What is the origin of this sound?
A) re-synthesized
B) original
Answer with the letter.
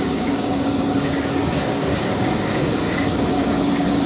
A